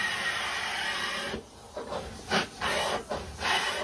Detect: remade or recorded recorded